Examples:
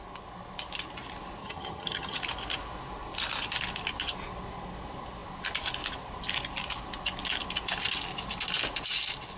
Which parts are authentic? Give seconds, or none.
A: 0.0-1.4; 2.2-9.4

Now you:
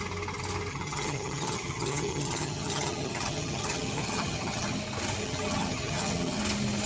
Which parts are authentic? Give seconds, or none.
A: 0.0-0.7; 4.8-5.2; 6.4-6.9

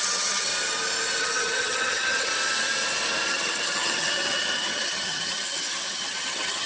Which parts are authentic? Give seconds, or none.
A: 0.5-1.2; 2.3-3.3

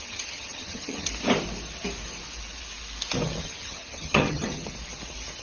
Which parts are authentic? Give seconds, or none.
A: 1.1-3.4; 4.7-5.4